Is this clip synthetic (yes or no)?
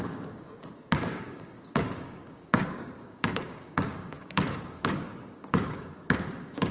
yes